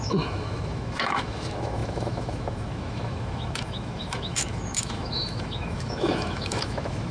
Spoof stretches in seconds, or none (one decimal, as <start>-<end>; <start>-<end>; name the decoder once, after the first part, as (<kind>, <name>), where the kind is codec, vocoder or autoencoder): 0.0-7.1 (autoencoder, DAC-VAE)